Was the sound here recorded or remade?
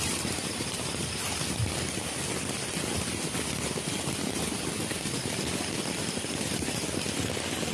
recorded